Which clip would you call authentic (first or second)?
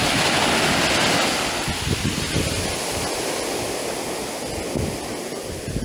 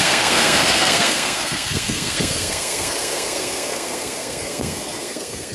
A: first